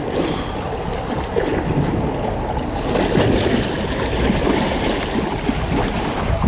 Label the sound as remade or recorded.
recorded